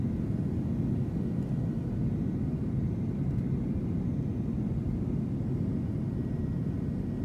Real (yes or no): yes